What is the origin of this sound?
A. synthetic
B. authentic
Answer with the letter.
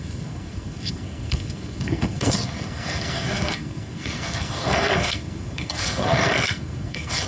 A